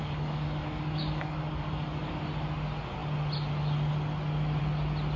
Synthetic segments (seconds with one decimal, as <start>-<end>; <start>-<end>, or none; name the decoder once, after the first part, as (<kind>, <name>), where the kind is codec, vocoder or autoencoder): 0.0-2.1 (codec, DAC)